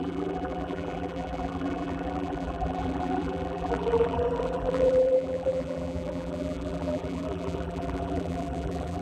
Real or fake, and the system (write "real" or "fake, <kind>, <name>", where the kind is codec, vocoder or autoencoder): fake, vocoder, BigVGAN v2